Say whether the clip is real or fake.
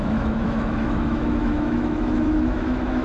fake